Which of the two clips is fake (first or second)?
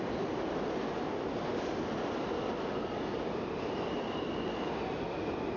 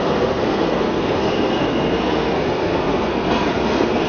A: second